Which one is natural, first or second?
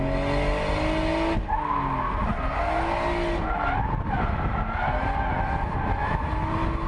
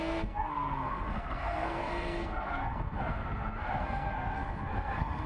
first